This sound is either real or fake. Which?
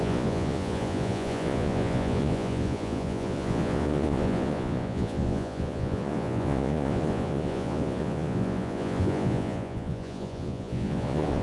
fake